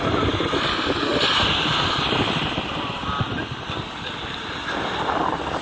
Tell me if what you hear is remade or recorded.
recorded